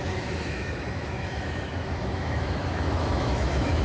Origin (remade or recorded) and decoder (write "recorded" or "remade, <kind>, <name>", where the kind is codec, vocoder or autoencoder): remade, autoencoder, DAC-VAE